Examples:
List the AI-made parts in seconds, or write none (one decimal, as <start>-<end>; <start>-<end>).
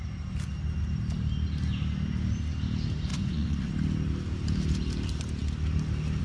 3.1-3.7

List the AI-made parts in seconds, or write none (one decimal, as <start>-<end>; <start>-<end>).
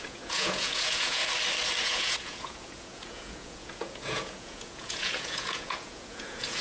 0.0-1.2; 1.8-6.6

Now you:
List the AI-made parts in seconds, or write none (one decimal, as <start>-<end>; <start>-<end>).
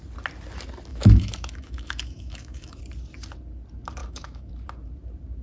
0.9-2.8; 4.0-4.5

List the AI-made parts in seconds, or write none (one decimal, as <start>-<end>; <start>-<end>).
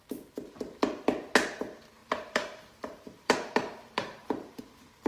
2.0-4.6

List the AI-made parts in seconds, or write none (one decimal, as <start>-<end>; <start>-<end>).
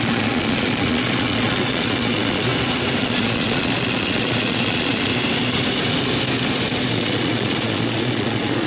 0.0-2.5; 3.0-5.1; 6.9-8.7